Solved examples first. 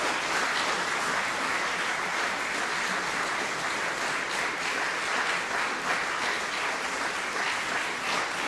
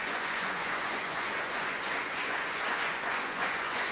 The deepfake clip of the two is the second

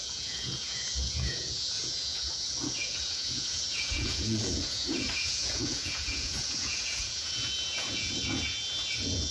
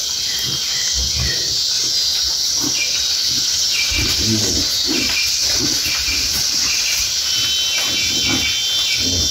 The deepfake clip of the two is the first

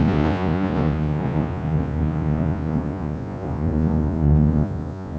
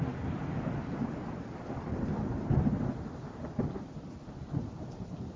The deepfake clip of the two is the first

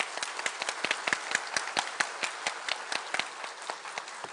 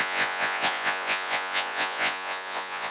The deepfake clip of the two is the second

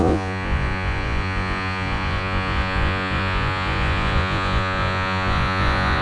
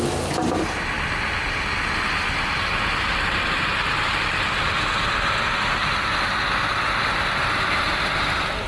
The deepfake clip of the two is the first